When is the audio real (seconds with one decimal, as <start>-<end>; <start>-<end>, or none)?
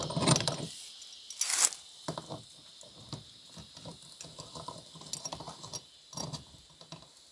0.0-7.3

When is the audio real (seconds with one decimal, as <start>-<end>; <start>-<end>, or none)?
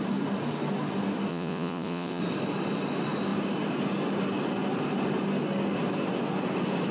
0.0-1.3; 2.2-6.9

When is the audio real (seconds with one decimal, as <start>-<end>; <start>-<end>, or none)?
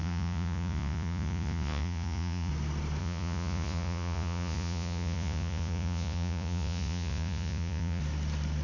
2.5-3.0; 8.0-8.6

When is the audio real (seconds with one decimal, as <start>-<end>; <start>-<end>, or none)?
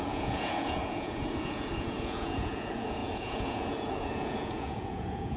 none